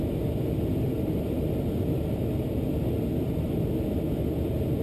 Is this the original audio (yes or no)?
yes